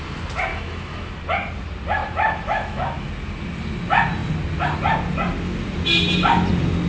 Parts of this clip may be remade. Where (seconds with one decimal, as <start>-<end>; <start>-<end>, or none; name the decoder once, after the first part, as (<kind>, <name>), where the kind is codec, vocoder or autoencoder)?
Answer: 0.5-1.1 (autoencoder, DAC-VAE); 2.0-3.1

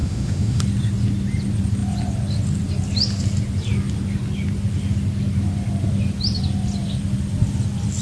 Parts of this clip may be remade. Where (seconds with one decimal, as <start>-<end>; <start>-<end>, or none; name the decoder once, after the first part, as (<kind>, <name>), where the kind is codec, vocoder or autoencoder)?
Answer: 0.0-0.6 (autoencoder, DAC-VAE)

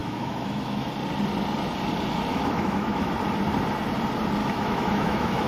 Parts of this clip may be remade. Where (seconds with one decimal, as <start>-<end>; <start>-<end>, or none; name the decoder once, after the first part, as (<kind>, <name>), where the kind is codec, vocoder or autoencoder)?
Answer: 0.0-0.9 (autoencoder, DAC-VAE); 2.3-3.1; 4.4-5.5

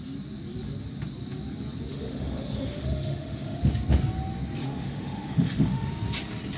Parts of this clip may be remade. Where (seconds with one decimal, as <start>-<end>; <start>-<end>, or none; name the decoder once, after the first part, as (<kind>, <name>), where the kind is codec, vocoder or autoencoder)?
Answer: 1.9-3.6 (autoencoder, DAC-VAE); 4.6-5.9

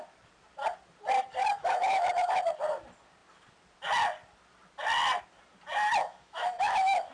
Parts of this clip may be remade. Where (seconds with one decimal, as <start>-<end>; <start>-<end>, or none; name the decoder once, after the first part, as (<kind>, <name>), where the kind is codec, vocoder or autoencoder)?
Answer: 1.4-2.4 (autoencoder, DAC-VAE); 6.0-7.1

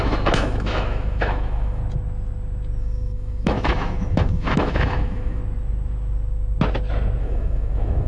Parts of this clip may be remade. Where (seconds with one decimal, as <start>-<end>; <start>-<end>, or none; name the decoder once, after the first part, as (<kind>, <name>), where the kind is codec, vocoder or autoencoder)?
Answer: 0.0-1.8 (autoencoder, DAC-VAE); 2.8-5.4; 7.2-8.1